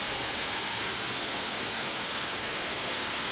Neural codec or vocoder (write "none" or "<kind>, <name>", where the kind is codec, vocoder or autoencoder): codec, SNAC